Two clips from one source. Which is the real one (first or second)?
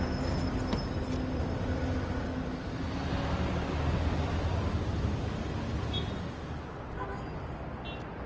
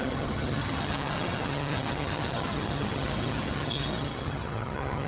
first